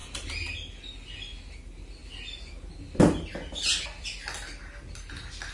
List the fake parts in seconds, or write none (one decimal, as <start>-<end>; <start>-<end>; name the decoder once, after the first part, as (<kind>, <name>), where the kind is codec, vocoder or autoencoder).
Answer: none